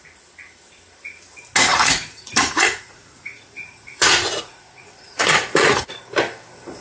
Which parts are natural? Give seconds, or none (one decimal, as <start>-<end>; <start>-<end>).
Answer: 0.0-1.7; 5.8-6.8